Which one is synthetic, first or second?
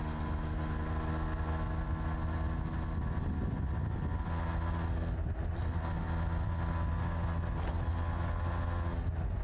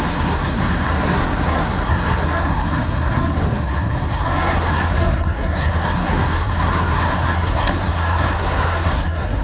second